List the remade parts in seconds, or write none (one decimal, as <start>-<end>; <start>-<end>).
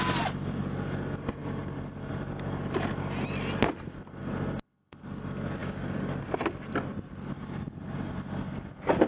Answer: 5.6-6.4